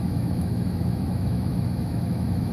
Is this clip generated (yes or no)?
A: yes